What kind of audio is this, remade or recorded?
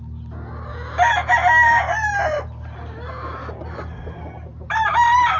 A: recorded